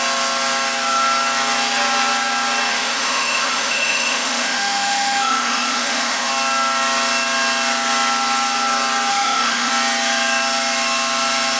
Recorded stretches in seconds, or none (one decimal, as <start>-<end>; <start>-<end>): 0.0-2.7; 6.3-9.1; 9.7-11.6